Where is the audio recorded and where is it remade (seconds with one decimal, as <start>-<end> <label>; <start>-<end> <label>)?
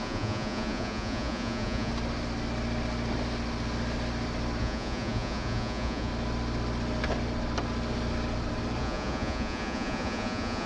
0.0-1.9 remade; 1.9-4.6 recorded; 4.6-6.1 remade; 6.1-8.8 recorded; 8.8-10.7 remade